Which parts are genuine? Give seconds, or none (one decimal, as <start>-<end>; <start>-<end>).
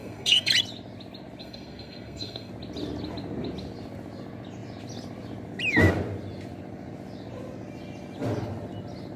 0.5-1.4; 2.5-9.2